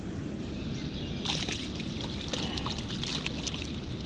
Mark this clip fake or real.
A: real